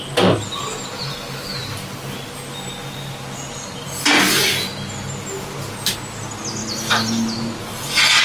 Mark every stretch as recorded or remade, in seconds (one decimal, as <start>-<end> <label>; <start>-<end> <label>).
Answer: 0.0-8.2 recorded